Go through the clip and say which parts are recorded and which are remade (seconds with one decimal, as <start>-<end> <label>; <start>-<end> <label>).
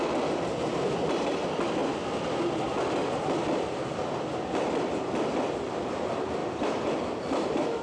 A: 0.0-6.4 recorded; 6.4-7.8 remade